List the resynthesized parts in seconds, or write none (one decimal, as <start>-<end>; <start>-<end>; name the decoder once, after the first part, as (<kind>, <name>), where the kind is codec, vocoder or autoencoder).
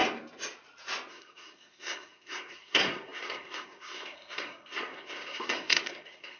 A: 1.1-6.4 (codec, SNAC)